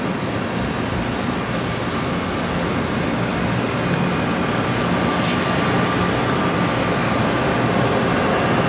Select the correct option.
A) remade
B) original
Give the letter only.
B